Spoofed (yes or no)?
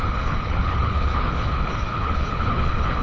yes